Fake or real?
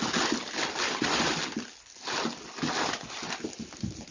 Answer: fake